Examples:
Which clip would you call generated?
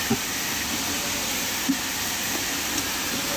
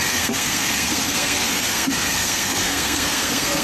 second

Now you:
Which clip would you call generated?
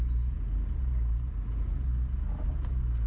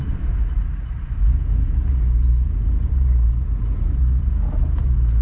second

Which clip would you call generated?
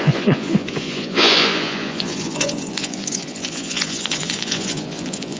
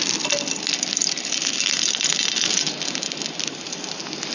first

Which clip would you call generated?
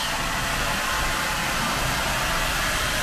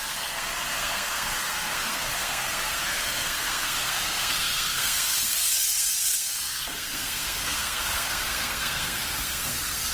second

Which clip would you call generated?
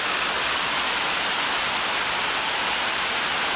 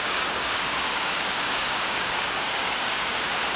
second